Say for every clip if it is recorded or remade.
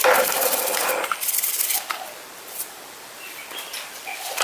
recorded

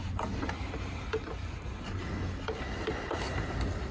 recorded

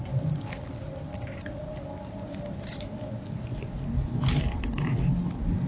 recorded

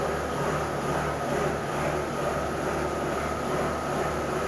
recorded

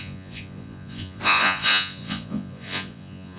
remade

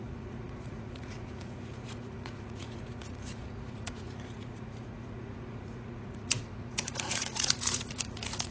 remade